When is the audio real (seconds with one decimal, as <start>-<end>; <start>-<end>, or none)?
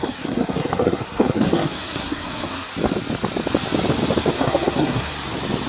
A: 2.7-4.3; 5.1-5.7